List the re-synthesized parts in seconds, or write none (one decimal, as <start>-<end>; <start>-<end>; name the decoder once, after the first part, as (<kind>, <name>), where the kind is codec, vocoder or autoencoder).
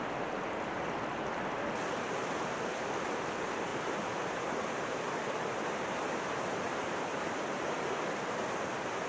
3.7-8.1 (vocoder, BigVGAN v2)